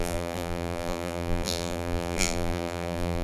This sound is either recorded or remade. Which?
remade